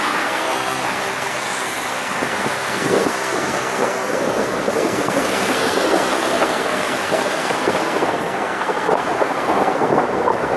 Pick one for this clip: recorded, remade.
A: remade